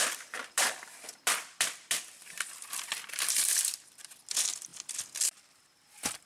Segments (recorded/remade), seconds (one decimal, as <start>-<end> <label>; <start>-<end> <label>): 0.0-0.4 recorded; 0.4-4.2 remade; 4.2-6.3 recorded